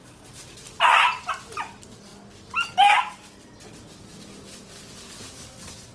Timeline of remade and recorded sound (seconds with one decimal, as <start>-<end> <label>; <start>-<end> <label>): 0.0-1.3 remade; 1.3-5.9 recorded